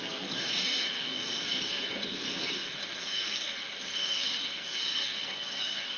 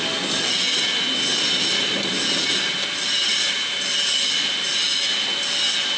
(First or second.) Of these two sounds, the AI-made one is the first